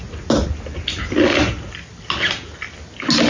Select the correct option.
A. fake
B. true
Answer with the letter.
B